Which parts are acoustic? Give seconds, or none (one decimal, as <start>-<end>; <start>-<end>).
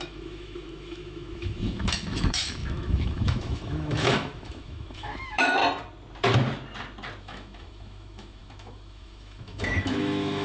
5.6-7.2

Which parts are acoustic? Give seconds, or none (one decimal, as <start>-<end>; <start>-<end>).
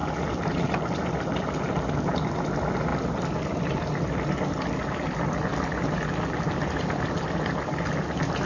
1.2-8.5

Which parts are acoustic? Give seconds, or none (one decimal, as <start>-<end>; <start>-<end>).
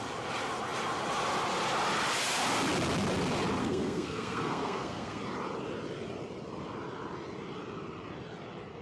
0.0-3.6; 5.2-8.8